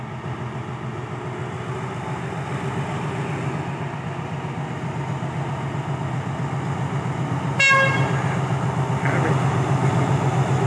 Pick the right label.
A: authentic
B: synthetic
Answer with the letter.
A